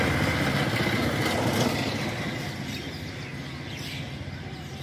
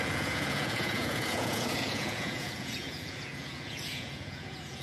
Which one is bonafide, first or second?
first